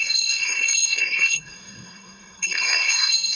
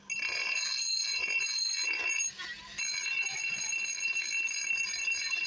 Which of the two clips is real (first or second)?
second